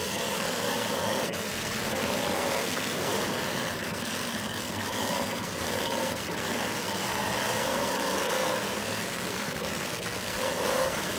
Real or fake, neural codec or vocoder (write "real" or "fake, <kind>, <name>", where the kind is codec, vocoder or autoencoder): fake, codec, SNAC